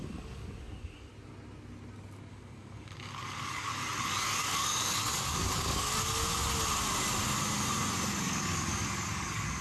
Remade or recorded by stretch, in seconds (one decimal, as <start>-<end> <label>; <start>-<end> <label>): 0.0-1.1 remade; 1.1-2.3 recorded; 2.3-3.7 remade; 3.7-4.4 recorded; 4.4-6.1 remade; 6.1-8.1 recorded; 8.1-9.6 remade